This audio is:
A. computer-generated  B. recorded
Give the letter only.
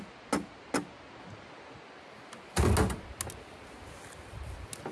B